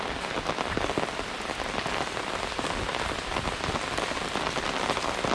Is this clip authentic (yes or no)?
yes